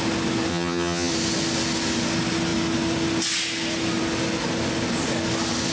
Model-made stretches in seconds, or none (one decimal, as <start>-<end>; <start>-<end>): 0.5-1.1